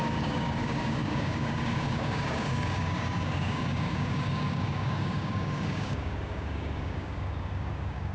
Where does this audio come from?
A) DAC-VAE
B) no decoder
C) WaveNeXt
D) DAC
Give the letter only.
D